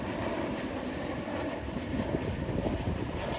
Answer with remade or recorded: remade